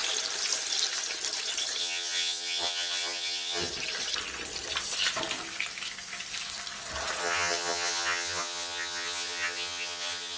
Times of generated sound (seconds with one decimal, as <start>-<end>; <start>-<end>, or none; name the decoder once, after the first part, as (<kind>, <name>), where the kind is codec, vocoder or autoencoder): 1.8-3.7 (vocoder, HiFi-GAN); 7.2-10.4